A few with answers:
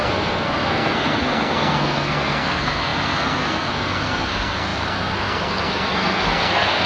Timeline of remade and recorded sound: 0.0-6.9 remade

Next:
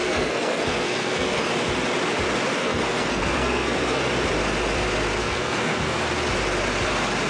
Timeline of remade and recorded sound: 0.0-1.5 remade; 1.5-2.6 recorded; 2.6-4.0 remade; 4.0-5.2 recorded; 5.2-6.0 remade; 6.0-7.3 recorded

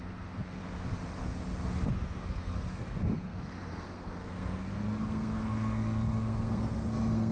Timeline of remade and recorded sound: 0.0-0.6 remade; 0.6-1.9 recorded; 1.9-7.3 remade

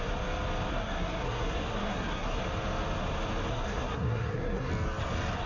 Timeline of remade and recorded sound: 0.0-0.7 recorded; 0.7-2.4 remade; 2.4-3.5 recorded; 3.5-4.7 remade; 4.7-5.5 recorded

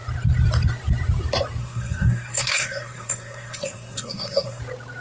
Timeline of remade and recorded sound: 0.0-1.6 recorded; 1.6-4.6 remade; 4.6-5.0 recorded

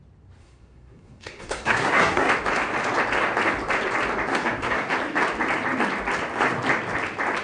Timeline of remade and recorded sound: 0.0-0.4 recorded; 0.4-2.3 remade; 2.3-4.3 recorded; 4.3-4.9 remade; 4.9-7.4 recorded

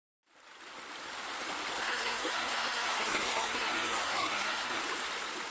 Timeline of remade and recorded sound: 0.0-1.8 recorded; 1.8-4.8 remade; 4.8-5.5 recorded

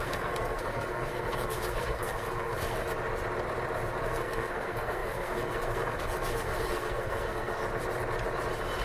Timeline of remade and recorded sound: 0.0-2.8 remade; 2.8-4.0 recorded; 4.0-7.6 remade; 7.6-8.8 recorded